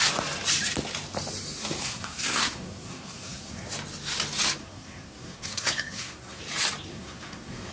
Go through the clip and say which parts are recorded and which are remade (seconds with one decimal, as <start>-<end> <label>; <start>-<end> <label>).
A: 0.0-1.8 recorded; 1.8-3.7 remade; 3.7-4.6 recorded; 4.6-6.4 remade; 6.4-6.9 recorded; 6.9-7.7 remade